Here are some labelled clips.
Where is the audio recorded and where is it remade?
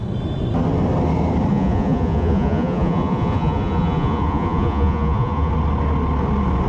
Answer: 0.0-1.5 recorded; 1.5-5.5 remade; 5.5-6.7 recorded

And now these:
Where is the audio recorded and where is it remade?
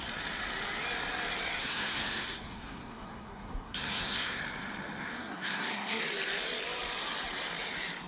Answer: 0.0-1.6 recorded; 1.6-4.4 remade; 4.4-5.1 recorded; 5.1-6.0 remade; 6.0-8.1 recorded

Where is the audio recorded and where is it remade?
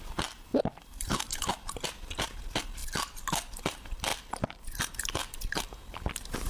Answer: 0.0-0.5 recorded; 0.5-1.5 remade; 1.5-4.1 recorded; 4.1-5.6 remade; 5.6-6.5 recorded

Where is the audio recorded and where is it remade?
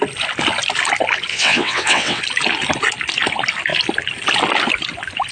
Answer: 0.0-1.3 recorded; 1.3-2.2 remade; 2.2-5.3 recorded